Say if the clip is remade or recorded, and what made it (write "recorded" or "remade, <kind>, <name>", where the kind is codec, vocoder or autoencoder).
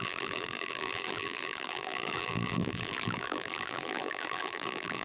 remade, vocoder, BigVGAN v2